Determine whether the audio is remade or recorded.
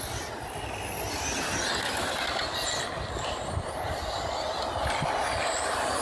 recorded